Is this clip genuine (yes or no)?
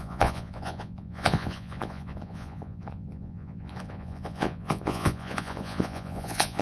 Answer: no